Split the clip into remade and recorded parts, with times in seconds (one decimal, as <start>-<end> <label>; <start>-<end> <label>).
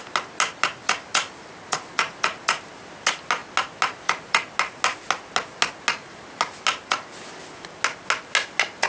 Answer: 0.0-8.9 recorded